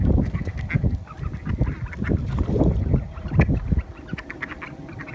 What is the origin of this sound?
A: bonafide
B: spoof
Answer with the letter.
A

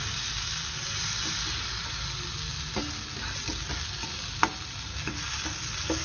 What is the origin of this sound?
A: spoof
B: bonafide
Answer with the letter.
B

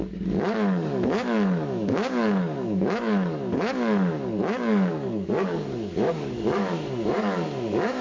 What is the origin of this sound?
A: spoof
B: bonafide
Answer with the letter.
A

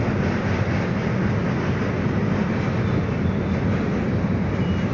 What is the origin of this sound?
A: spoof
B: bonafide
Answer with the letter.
B